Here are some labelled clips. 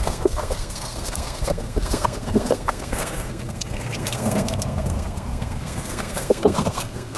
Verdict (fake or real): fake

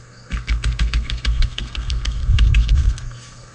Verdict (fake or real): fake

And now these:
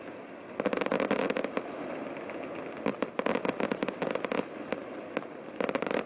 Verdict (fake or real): real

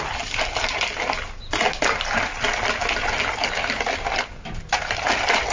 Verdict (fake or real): real